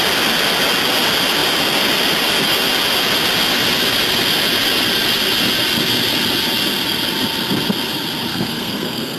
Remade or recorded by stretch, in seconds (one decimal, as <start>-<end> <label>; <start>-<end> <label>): 0.0-8.3 recorded; 8.3-9.2 remade